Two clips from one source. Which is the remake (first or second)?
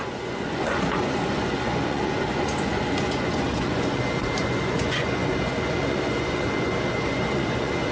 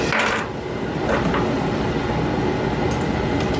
first